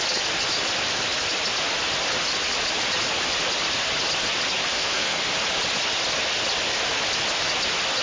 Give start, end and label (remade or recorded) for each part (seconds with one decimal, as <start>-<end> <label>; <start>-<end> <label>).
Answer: 0.0-4.7 recorded; 4.7-5.2 remade; 5.2-8.0 recorded